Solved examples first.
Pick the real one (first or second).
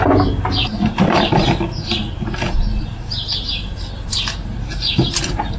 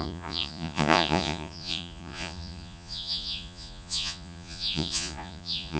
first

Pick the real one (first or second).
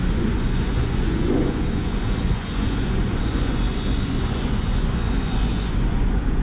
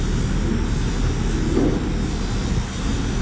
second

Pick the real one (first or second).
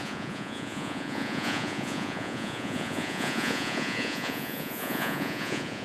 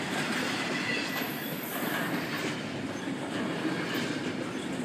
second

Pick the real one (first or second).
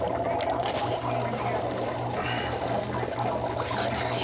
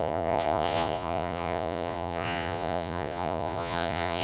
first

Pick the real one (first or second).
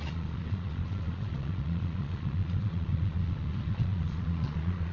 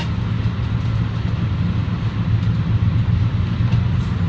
second